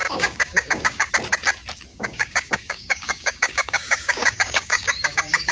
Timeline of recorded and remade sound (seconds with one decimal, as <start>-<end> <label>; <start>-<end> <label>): 0.0-1.1 remade; 1.1-1.9 recorded; 1.9-5.5 remade